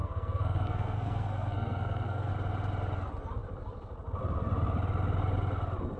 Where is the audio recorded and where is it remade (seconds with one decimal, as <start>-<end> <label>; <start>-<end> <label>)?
0.0-2.3 remade; 2.3-6.0 recorded